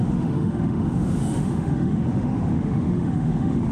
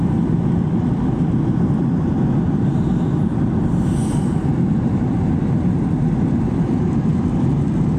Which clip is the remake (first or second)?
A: first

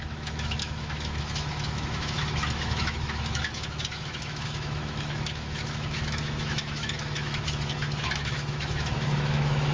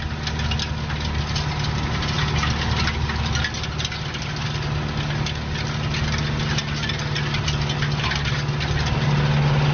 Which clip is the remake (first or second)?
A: first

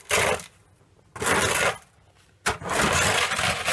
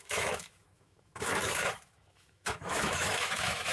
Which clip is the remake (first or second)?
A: second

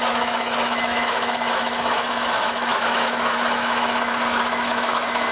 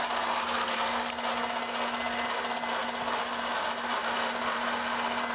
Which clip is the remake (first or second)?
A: first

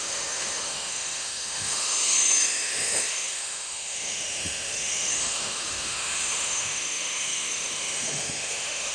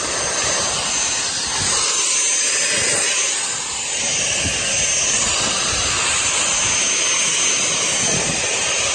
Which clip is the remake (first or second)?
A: first